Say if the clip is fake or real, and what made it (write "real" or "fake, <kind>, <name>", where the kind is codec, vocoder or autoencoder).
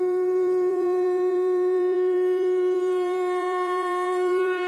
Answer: fake, vocoder, BigVGAN v2